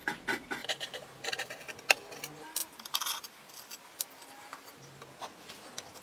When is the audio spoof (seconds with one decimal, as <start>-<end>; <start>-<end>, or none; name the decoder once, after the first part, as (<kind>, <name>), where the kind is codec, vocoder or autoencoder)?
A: 2.6-3.8 (vocoder, BigVGAN v2)